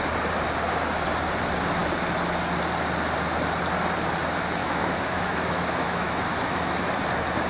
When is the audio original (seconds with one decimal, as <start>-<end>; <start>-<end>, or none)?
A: 0.0-4.6; 6.9-7.5